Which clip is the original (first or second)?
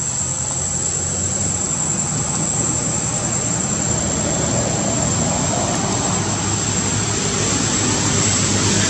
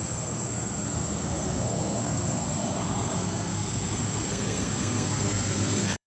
first